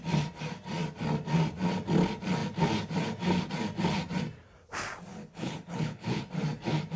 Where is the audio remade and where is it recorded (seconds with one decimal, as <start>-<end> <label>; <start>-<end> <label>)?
0.0-5.1 recorded; 5.1-6.2 remade; 6.2-7.0 recorded